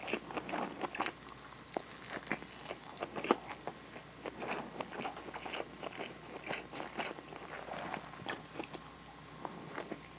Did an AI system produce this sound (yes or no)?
no